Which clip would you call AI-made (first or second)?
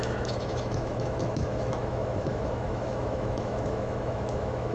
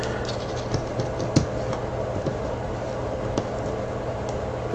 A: first